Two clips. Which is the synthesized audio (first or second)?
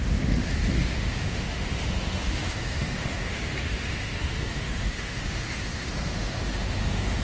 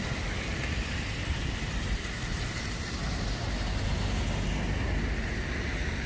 first